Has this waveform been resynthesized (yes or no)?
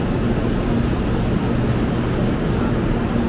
no